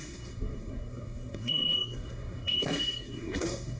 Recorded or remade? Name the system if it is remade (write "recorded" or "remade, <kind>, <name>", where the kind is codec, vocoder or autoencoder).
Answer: remade, codec, SNAC